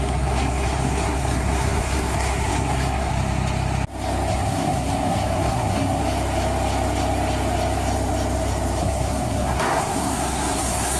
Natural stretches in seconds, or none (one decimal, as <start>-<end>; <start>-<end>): 3.1-4.3; 6.0-8.8